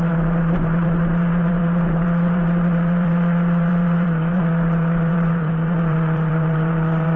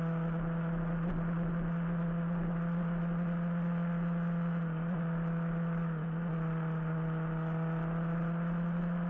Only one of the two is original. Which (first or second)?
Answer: second